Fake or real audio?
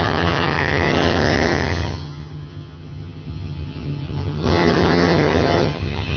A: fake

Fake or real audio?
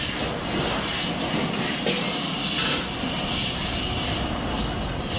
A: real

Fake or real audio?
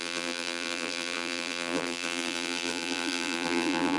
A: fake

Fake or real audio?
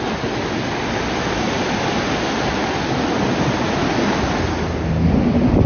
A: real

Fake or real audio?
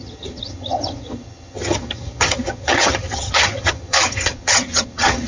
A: fake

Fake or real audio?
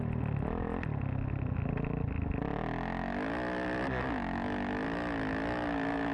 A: real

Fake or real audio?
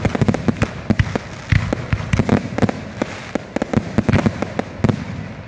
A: real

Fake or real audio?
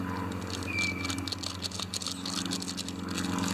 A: real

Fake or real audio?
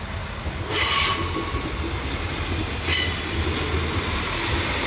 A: real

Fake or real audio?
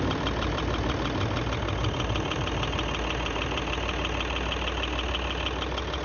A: real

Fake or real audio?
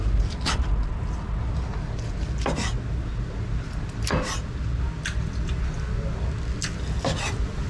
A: real